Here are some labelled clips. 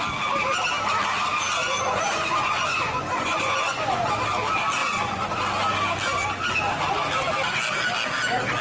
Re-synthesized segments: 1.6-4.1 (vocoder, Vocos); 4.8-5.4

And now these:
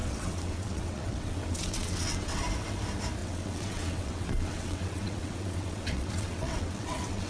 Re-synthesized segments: 0.0-2.4 (vocoder, WaveNeXt); 3.2-7.3

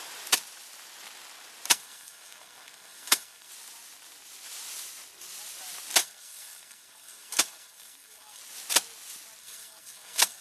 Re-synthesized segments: 1.7-3.5 (codec, SNAC); 6.0-8.4; 9.4-10.4

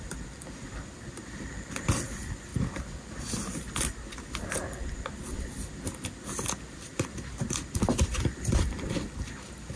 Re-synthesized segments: 0.0-2.5 (vocoder, BigVGAN v2); 7.7-9.8

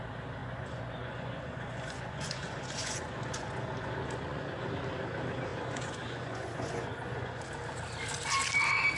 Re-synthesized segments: 0.4-4.7 (vocoder, Vocos); 5.5-7.4

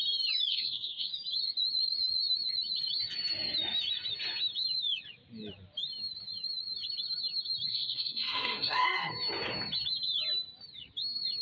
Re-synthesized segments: 0.5-1.1 (codec, SNAC); 7.7-9.1